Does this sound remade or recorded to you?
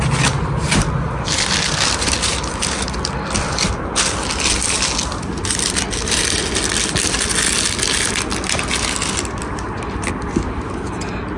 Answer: recorded